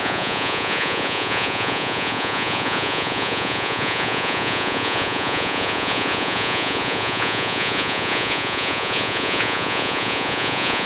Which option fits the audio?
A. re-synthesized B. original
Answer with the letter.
A